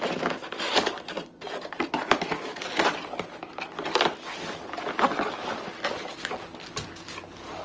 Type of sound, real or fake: real